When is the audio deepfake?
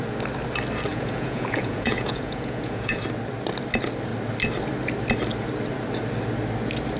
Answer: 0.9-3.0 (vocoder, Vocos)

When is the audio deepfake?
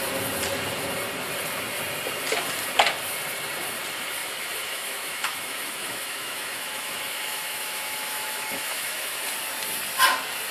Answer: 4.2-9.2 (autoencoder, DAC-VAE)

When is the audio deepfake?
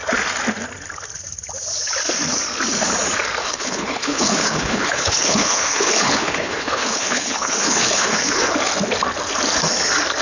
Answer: 3.4-8.5 (codec, HILCodec)